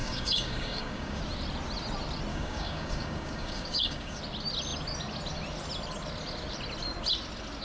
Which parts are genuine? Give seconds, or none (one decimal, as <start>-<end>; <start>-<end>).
1.2-2.3; 4.2-7.6